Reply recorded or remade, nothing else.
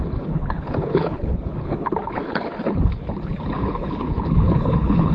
remade